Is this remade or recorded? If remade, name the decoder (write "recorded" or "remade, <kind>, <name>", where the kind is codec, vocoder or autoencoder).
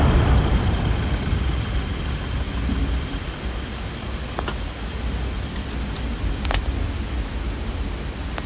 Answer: recorded